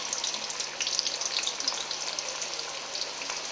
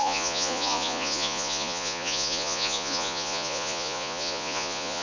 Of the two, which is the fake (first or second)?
second